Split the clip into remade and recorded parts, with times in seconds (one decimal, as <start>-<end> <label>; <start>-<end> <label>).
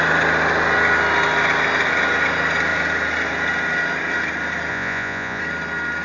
0.0-4.7 recorded; 4.7-5.4 remade; 5.4-6.0 recorded